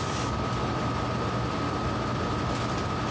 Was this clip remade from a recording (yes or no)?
no